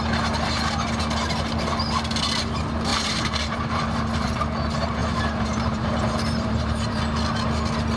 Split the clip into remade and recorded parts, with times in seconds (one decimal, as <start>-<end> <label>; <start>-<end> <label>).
0.0-2.9 recorded; 2.9-4.4 remade; 4.4-5.0 recorded; 5.0-7.0 remade; 7.0-8.0 recorded